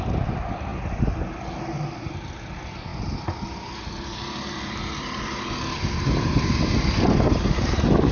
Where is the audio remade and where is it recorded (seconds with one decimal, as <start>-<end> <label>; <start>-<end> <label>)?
0.0-8.1 recorded